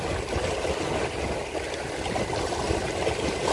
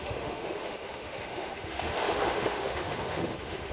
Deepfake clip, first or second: second